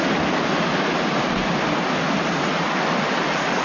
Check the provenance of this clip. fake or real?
real